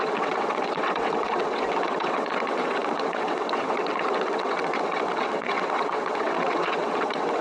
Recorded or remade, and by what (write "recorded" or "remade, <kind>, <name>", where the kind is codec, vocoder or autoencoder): remade, vocoder, WaveNeXt